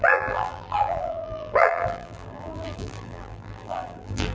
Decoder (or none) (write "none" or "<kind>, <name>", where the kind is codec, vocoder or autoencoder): vocoder, BigVGAN v2